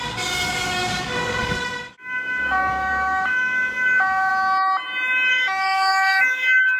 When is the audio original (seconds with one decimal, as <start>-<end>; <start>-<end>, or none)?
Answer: 4.3-5.3